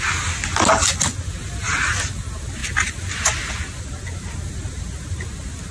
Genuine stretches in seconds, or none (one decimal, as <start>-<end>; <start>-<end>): 0.0-5.7